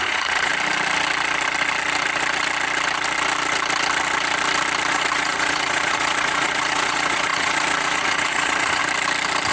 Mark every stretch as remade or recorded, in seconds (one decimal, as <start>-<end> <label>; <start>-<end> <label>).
0.0-0.5 remade; 0.5-4.9 recorded; 4.9-8.8 remade; 8.8-9.5 recorded